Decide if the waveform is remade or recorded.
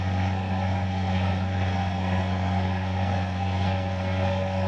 remade